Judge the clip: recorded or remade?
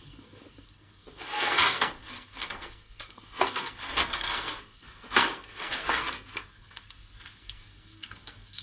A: remade